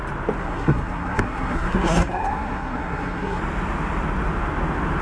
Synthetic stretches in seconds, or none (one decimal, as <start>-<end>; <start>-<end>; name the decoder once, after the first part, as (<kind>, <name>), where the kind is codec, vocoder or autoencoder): 0.4-3.4 (codec, SNAC)